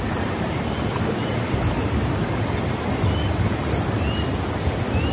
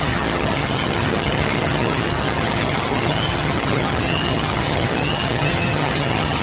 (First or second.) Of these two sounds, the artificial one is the second